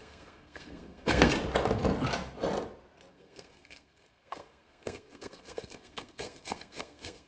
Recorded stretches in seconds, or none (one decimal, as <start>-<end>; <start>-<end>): 1.3-3.1